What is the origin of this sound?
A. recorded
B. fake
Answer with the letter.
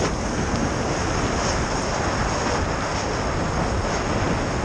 A